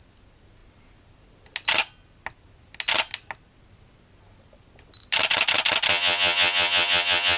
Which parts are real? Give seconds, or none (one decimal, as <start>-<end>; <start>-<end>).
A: 0.0-5.9